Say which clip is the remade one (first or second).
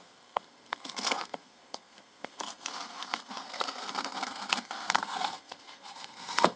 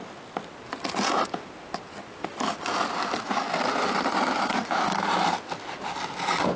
first